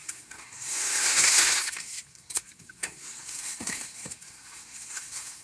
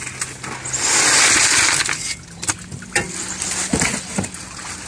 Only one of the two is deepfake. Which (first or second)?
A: first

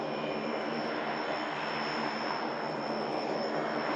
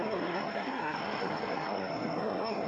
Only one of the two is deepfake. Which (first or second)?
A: second